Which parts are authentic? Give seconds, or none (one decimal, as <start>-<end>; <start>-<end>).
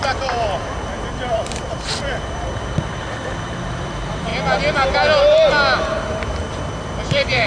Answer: 4.3-5.9